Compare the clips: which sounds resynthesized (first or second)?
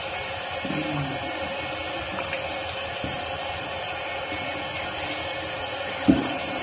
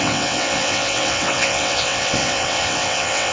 second